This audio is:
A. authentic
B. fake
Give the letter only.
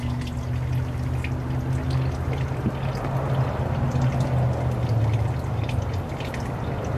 A